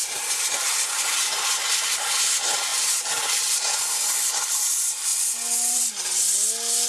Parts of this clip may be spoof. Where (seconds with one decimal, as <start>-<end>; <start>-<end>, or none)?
0.0-1.0; 2.7-3.3; 5.1-5.8